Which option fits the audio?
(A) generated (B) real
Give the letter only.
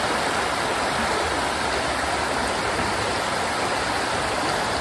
B